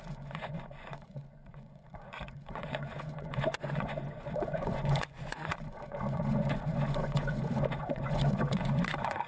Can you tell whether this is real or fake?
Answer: fake